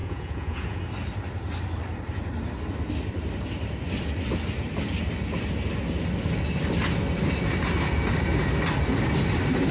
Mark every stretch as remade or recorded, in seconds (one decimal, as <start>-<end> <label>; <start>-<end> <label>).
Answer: 0.0-0.8 remade; 0.8-9.7 recorded